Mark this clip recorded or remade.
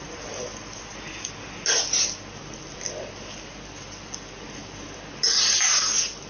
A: recorded